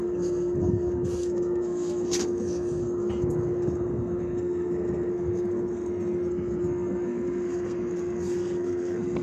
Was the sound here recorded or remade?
remade